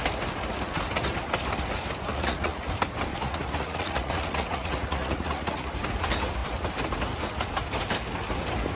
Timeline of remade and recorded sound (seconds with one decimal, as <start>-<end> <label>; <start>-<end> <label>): 0.0-2.1 recorded; 2.1-2.7 remade; 2.7-3.1 recorded; 3.1-5.7 remade; 5.7-8.7 recorded

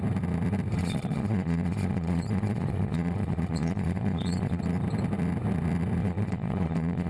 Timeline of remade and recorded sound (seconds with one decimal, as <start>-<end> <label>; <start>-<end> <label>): 0.0-0.8 recorded; 0.8-4.6 remade; 4.6-6.0 recorded; 6.0-7.1 remade

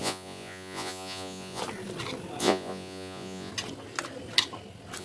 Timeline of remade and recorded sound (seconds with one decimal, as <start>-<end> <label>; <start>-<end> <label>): 0.0-1.6 remade; 1.6-2.4 recorded; 2.4-3.5 remade; 3.5-5.0 recorded

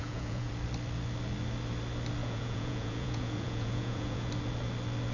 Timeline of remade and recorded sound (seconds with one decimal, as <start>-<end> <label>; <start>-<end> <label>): 0.0-0.5 remade; 0.5-2.2 recorded; 2.2-4.3 remade; 4.3-5.1 recorded